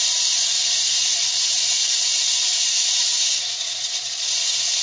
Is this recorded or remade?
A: remade